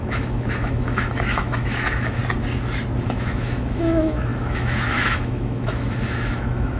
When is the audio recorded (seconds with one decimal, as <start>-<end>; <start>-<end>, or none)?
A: 2.2-3.0